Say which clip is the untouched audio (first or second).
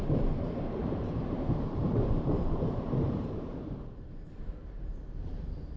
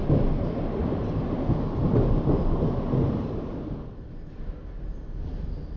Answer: second